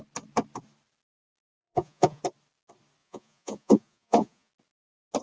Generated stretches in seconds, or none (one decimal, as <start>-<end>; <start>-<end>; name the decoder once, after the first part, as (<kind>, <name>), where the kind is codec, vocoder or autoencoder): 1.5-2.2 (vocoder, Vocos); 3.0-4.5